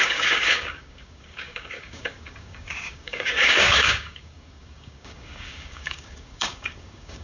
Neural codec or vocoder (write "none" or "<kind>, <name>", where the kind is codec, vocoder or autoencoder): codec, DAC